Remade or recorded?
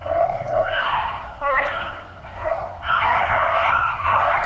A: remade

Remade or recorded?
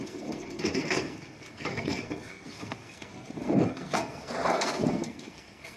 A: remade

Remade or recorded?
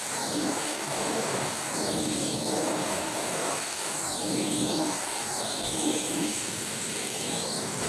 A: remade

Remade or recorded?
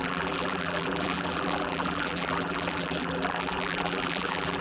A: remade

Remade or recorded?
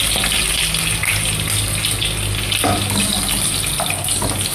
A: recorded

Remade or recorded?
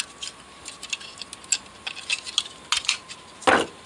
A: recorded